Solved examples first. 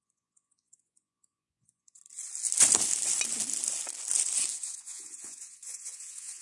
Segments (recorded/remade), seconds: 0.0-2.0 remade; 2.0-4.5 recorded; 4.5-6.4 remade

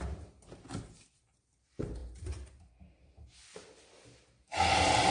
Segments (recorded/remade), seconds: 0.0-5.1 recorded